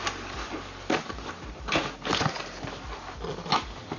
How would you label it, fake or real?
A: real